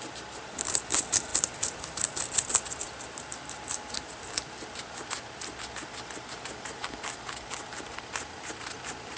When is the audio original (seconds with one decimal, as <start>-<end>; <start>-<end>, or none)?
none